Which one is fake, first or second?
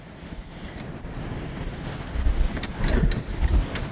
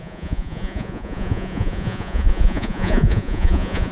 second